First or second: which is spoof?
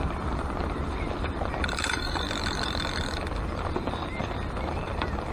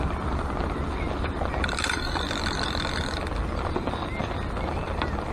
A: first